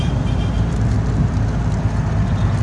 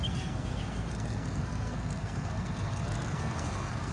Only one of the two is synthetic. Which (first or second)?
second